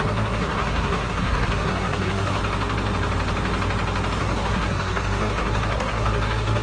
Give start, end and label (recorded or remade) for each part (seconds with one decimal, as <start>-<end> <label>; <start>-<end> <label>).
0.0-2.4 remade; 2.4-4.2 recorded; 4.2-6.6 remade